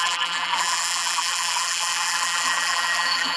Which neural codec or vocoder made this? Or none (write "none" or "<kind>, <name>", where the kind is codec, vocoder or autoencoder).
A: vocoder, BigVGAN v2